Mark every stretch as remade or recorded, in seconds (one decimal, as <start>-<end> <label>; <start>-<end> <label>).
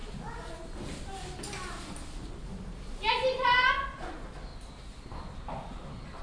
0.0-6.2 recorded